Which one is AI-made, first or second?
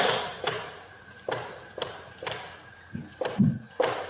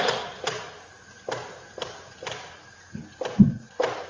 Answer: first